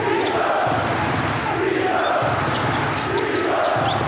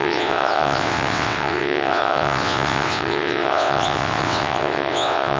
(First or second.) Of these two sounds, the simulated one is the second